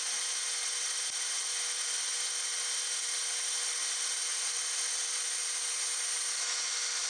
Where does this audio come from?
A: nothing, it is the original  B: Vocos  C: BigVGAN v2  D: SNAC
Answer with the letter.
A